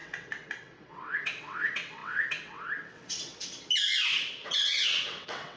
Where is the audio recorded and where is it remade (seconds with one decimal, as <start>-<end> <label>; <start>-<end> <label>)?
0.0-3.3 remade; 3.3-4.1 recorded; 4.1-5.6 remade